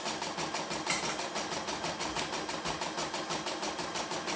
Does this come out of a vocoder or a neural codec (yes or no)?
no